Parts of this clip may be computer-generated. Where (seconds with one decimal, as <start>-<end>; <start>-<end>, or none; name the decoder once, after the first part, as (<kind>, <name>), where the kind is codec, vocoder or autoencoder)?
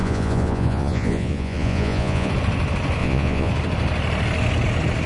0.0-2.3 (vocoder, Vocos); 3.0-3.5